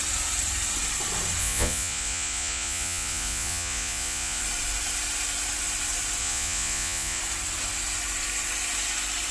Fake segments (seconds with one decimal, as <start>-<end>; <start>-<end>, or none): 1.4-4.4; 6.2-7.2

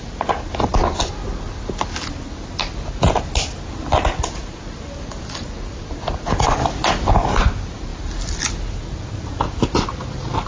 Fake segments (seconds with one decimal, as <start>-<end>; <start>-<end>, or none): none

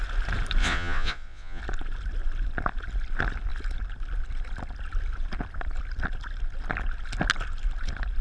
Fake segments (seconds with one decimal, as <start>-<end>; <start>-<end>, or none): 0.6-1.6

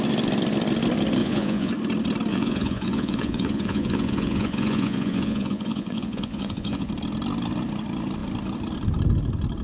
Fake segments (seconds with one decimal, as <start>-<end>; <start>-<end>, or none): 1.2-1.7; 2.3-6.9

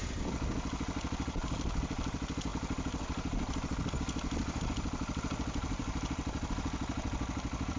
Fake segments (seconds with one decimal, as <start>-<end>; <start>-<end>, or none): none